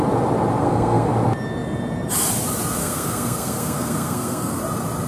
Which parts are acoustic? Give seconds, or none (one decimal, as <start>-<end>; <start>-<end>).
0.0-0.6; 1.1-2.8; 4.6-5.1